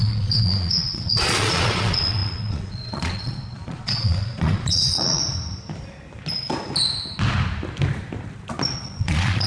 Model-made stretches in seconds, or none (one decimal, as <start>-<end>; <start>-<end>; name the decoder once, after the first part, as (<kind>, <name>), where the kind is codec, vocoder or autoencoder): 0.0-5.2 (vocoder, Vocos); 8.8-9.5